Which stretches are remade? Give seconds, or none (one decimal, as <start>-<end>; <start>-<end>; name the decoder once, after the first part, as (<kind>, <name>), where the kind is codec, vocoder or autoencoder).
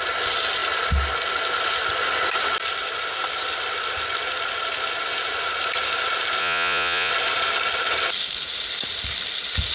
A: 6.4-7.1 (vocoder, Vocos)